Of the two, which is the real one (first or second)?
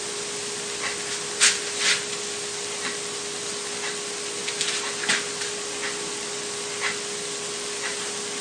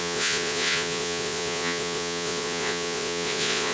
first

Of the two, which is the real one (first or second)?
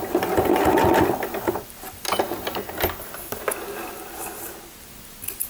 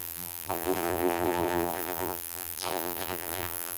first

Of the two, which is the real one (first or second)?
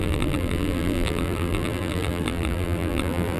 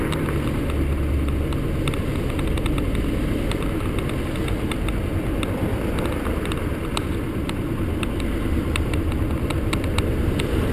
second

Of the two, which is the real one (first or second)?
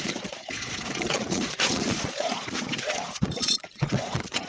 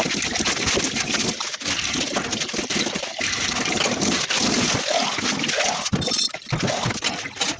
second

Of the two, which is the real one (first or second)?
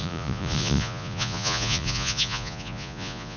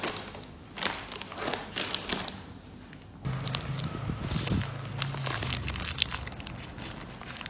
second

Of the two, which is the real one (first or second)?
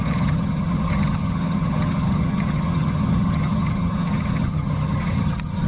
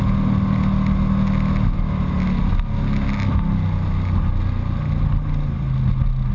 second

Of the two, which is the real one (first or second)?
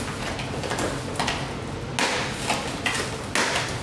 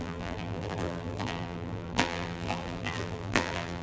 first